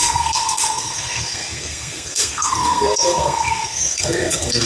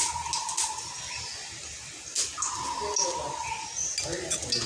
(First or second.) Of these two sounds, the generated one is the first